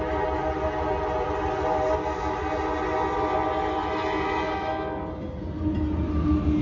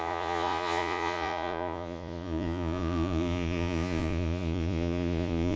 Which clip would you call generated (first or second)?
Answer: second